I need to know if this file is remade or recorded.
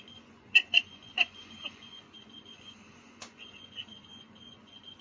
remade